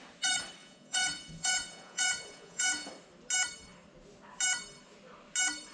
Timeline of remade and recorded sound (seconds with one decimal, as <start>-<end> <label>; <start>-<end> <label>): 0.0-0.6 recorded; 0.6-2.9 remade; 2.9-5.7 recorded